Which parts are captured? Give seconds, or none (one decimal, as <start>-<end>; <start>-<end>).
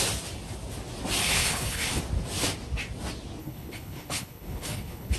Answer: 0.0-1.2; 2.0-3.4